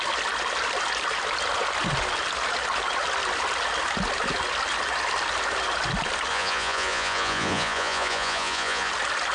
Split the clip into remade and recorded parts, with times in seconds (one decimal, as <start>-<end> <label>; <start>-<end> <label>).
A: 0.0-6.3 recorded; 6.3-8.9 remade; 8.9-9.3 recorded